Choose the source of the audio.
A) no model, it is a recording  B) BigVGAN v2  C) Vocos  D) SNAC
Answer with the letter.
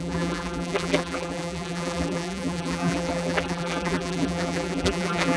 B